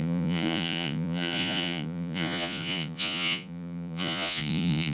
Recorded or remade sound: remade